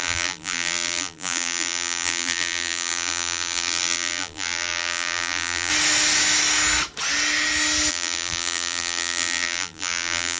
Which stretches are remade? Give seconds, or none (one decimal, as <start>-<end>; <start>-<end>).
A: 0.0-5.7; 7.9-10.4